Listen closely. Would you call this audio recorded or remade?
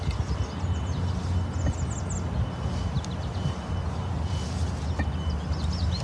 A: recorded